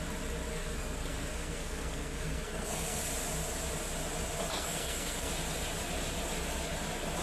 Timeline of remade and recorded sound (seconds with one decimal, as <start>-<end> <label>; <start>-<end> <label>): 0.0-0.5 recorded; 0.5-3.0 remade; 3.0-4.5 recorded; 4.5-5.3 remade; 5.3-7.2 recorded